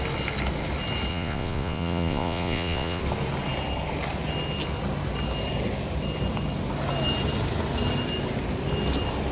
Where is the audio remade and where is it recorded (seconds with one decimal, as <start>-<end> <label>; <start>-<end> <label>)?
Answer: 0.0-1.1 recorded; 1.1-3.0 remade; 3.0-9.3 recorded